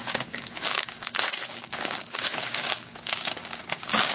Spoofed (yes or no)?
yes